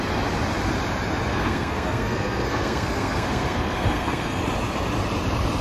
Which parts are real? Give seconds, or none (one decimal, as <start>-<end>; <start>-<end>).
0.0-1.3; 4.4-5.6